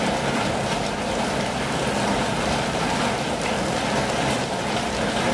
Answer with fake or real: real